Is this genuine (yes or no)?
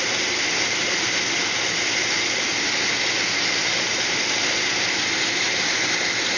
yes